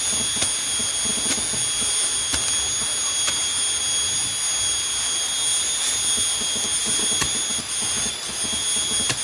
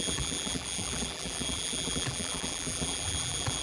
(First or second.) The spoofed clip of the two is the second